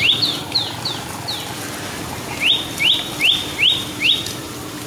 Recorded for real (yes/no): yes